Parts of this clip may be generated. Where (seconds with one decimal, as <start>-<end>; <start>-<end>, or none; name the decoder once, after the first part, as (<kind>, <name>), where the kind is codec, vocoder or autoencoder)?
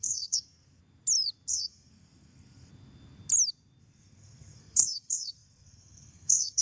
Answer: 0.0-0.8 (codec, SNAC); 1.5-2.7; 3.8-6.6